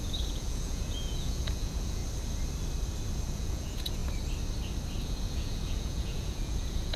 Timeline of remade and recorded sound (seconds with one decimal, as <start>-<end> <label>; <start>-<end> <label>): 0.0-2.0 remade; 2.0-3.3 recorded; 3.3-4.0 remade; 4.0-5.0 recorded; 5.0-7.0 remade